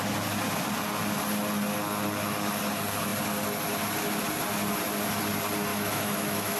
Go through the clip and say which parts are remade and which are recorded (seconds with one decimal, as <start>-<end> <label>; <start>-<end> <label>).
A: 0.0-5.7 recorded; 5.7-6.6 remade